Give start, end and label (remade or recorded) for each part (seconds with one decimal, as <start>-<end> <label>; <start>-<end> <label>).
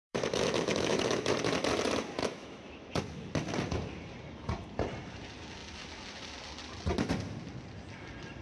0.0-1.3 remade; 1.3-2.2 recorded; 2.2-3.0 remade; 3.0-8.4 recorded